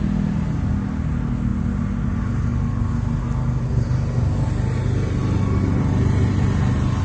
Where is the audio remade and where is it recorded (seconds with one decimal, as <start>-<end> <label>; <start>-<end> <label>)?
0.0-7.0 recorded

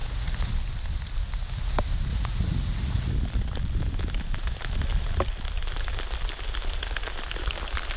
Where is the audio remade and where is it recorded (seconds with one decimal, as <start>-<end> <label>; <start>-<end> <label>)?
0.0-0.5 remade; 0.5-2.1 recorded; 2.1-3.1 remade; 3.1-8.0 recorded

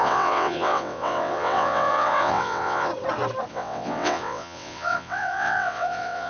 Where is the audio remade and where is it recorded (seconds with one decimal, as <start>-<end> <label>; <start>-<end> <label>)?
0.0-2.9 remade; 2.9-3.5 recorded; 3.5-6.3 remade

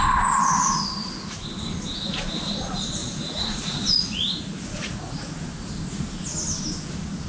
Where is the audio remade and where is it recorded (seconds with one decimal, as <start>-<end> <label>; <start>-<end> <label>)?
0.0-3.0 recorded; 3.0-5.7 remade; 5.7-7.3 recorded

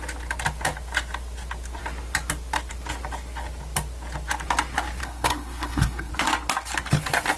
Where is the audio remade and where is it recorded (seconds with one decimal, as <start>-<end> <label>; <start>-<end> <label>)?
0.0-5.0 recorded; 5.0-6.1 remade; 6.1-7.4 recorded